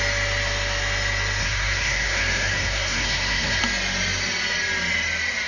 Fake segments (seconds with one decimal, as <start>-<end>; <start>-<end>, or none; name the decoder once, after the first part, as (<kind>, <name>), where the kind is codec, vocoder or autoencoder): 1.4-3.6 (codec, SNAC)

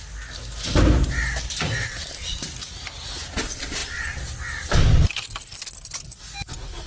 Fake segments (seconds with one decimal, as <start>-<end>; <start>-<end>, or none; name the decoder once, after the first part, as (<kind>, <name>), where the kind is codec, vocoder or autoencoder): none

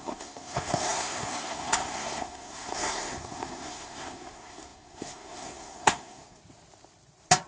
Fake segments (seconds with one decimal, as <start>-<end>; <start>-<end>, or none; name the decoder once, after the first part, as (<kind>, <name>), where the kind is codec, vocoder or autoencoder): 0.0-6.4 (codec, SNAC)

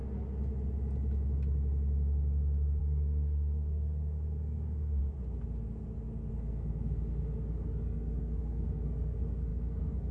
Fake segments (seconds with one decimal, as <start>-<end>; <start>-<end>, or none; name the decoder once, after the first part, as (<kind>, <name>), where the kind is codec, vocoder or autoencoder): 2.8-5.0 (codec, SNAC); 6.3-10.1

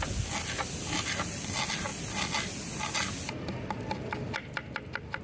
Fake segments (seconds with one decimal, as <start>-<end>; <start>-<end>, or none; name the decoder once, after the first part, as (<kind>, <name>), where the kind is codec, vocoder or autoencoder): none